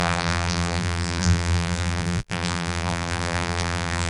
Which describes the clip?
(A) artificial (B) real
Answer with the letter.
A